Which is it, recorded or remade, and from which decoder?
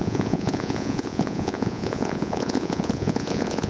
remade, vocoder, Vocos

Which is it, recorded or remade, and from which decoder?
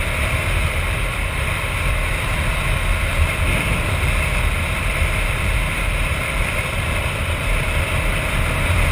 remade, vocoder, BigVGAN v2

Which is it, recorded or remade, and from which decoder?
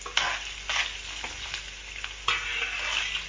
recorded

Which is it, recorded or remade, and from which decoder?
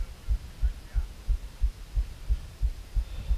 recorded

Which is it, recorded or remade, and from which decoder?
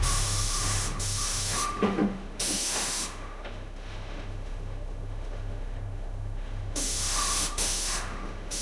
remade, autoencoder, DAC-VAE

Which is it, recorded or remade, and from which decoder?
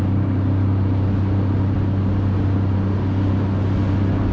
recorded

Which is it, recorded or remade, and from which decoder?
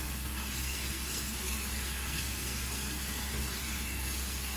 remade, codec, SNAC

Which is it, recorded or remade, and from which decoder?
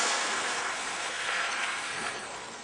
remade, codec, SNAC